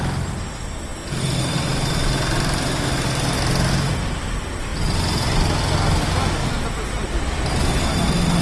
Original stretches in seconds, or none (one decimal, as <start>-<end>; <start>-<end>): 0.0-8.4